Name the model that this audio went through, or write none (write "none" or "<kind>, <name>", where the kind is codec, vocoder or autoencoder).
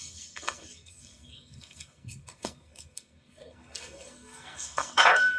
codec, SNAC